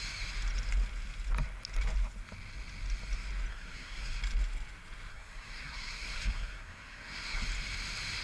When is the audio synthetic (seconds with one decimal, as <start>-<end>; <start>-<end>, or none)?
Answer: 3.5-4.2; 5.1-7.4